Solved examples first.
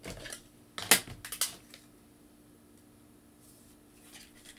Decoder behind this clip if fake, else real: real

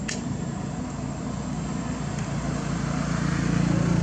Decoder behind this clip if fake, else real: real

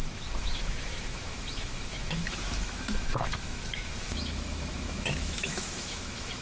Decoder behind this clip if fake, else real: fake, autoencoder, DAC-VAE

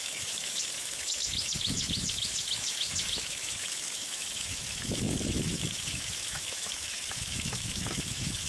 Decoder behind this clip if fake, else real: fake, autoencoder, DAC-VAE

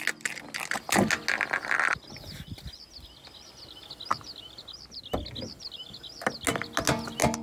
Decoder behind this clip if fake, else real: real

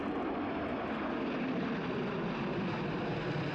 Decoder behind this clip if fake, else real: real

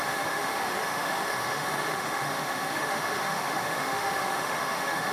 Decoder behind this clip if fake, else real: fake, autoencoder, DAC-VAE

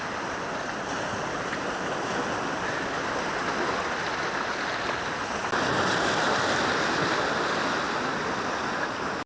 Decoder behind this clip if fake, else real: real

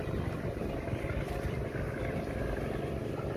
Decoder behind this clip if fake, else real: real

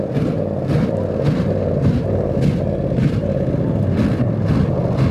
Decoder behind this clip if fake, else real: real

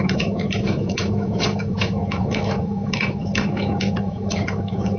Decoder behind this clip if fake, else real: fake, autoencoder, DAC-VAE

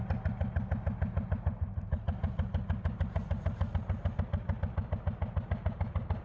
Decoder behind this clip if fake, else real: real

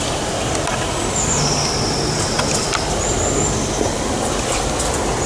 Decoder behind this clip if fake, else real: real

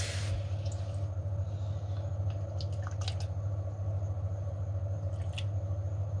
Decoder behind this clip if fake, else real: real